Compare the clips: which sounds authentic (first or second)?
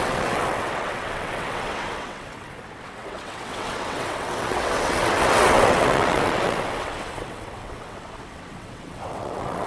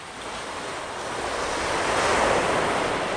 second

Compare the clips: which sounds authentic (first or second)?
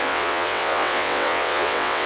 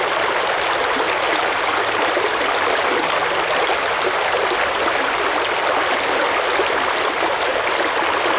second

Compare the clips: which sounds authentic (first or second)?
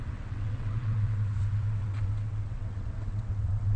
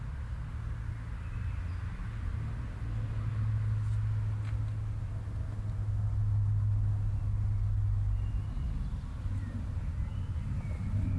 second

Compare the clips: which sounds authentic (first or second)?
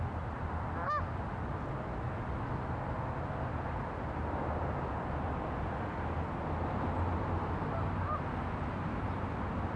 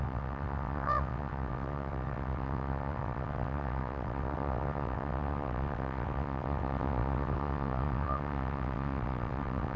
first